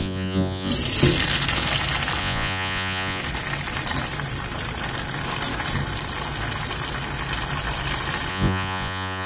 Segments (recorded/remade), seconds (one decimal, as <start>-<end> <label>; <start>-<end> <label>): 0.0-0.7 remade; 0.7-2.2 recorded; 2.2-3.2 remade; 3.2-8.3 recorded; 8.3-9.3 remade